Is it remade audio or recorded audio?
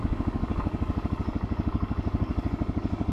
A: remade